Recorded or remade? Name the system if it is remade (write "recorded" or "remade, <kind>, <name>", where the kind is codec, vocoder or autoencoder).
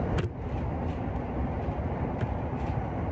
recorded